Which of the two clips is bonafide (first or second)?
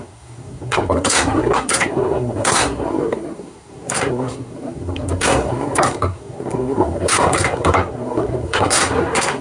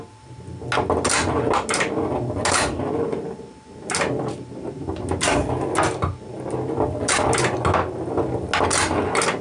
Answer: second